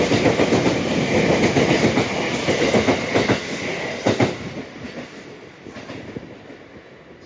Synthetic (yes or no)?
no